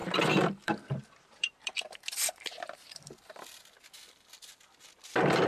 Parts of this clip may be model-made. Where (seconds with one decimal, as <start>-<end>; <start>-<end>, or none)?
0.0-3.3